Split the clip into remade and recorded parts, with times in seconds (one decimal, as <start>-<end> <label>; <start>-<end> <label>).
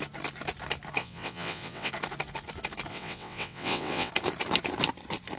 0.0-1.0 recorded; 1.0-1.9 remade; 1.9-2.9 recorded; 2.9-4.1 remade; 4.1-5.4 recorded